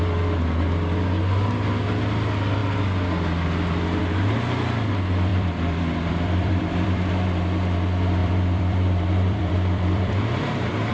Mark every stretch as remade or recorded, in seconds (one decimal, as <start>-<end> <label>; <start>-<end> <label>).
0.0-5.3 recorded; 5.3-7.1 remade; 7.1-8.2 recorded; 8.2-10.9 remade